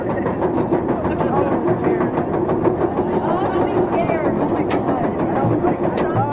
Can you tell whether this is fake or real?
real